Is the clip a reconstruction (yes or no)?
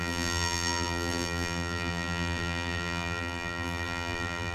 yes